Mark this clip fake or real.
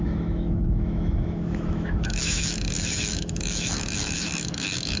fake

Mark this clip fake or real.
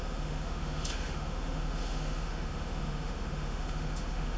fake